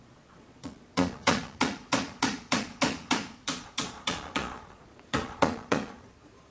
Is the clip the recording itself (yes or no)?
no